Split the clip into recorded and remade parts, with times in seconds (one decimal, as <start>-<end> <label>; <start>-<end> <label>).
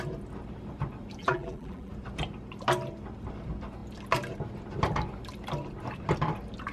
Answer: 0.0-1.2 recorded; 1.2-1.9 remade; 1.9-6.7 recorded